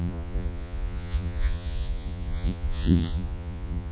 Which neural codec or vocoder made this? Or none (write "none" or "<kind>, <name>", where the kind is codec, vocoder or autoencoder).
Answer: vocoder, Vocos